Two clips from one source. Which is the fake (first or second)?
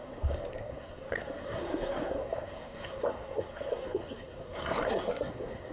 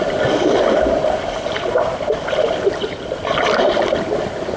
first